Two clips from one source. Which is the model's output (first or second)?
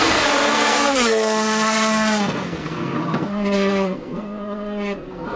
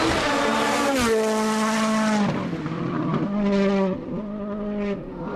first